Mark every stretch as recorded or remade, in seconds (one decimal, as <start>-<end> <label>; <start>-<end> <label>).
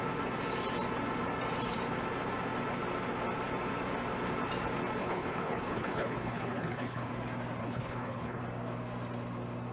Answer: 0.0-5.0 recorded; 5.0-7.1 remade; 7.1-7.6 recorded; 7.6-8.4 remade; 8.4-9.7 recorded